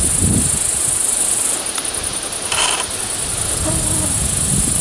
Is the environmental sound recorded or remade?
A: recorded